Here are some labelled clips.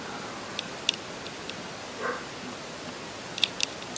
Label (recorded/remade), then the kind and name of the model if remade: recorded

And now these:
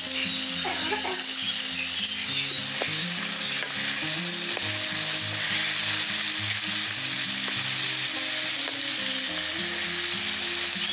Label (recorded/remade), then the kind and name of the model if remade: recorded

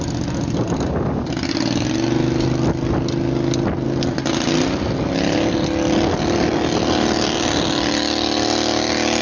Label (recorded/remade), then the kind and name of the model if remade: recorded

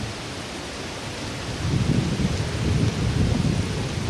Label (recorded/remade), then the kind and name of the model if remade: recorded